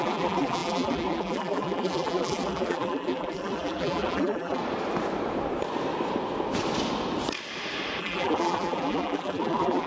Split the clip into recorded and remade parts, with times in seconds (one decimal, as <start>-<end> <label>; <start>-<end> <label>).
0.0-4.6 remade; 4.6-8.0 recorded; 8.0-9.9 remade